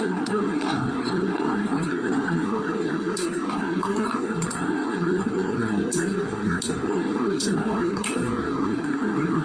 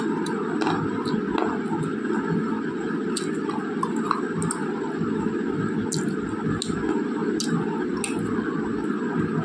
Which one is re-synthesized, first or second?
first